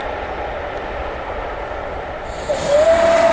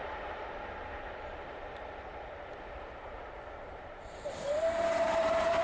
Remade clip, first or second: second